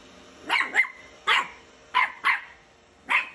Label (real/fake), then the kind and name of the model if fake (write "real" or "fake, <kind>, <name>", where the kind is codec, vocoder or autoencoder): real